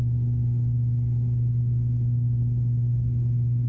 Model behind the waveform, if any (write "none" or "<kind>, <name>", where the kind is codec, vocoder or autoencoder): none